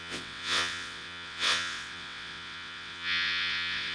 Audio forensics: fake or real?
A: fake